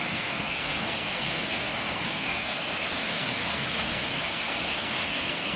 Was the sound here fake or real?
fake